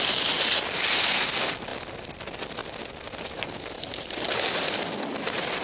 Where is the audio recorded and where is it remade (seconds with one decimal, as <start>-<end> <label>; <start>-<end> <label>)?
0.0-5.6 recorded